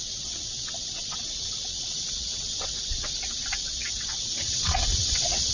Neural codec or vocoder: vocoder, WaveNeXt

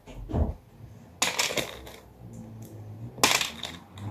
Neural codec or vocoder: none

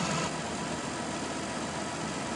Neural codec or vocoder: none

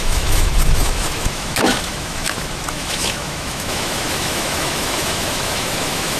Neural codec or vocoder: autoencoder, DAC-VAE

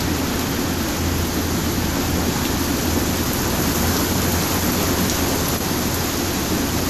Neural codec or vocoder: none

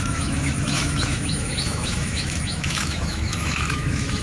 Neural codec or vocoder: autoencoder, DAC-VAE